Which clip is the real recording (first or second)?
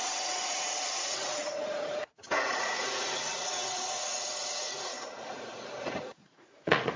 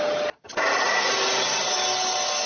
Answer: second